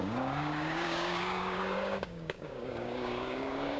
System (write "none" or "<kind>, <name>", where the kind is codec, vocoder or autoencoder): codec, DAC